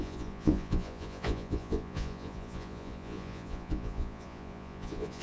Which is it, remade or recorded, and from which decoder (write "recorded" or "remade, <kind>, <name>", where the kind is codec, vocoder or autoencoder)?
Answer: remade, vocoder, Vocos